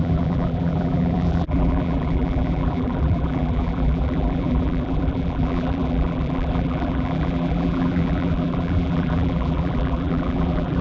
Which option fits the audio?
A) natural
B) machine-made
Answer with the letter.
B